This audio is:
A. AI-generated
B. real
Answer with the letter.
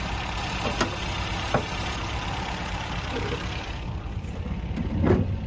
B